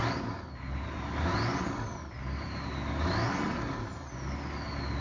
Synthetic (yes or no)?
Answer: no